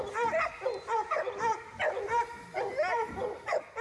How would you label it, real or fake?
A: real